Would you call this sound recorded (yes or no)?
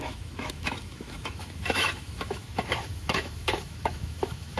no